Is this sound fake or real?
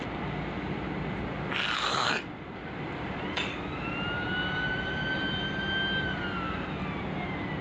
real